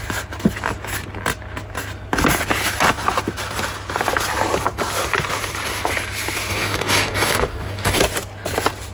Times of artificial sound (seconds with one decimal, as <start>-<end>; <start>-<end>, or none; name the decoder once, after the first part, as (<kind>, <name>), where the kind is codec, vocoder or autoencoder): 6.5-8.0 (codec, DAC)